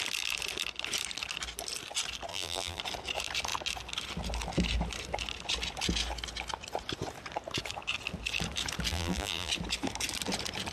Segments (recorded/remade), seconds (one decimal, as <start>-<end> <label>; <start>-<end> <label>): 0.0-2.3 recorded; 2.3-2.8 remade; 2.8-8.9 recorded; 8.9-9.5 remade; 9.5-10.7 recorded